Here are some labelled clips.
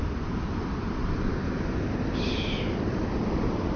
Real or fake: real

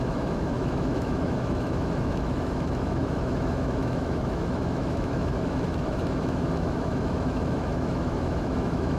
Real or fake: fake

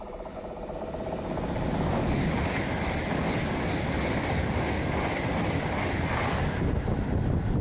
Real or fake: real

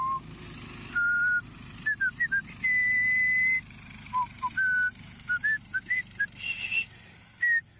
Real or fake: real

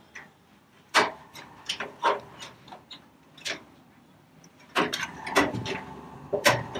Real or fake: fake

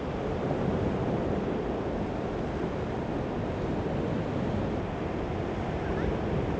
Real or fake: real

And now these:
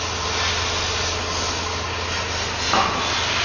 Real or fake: real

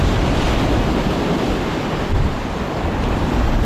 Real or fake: real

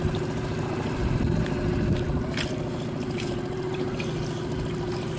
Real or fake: real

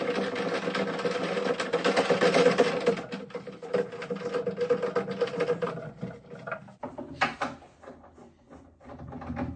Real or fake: real